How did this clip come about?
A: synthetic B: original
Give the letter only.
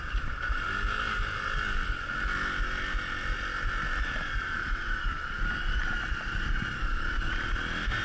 B